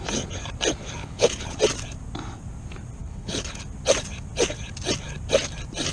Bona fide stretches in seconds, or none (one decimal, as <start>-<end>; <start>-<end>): 0.0-1.0; 1.6-3.0; 3.6-5.9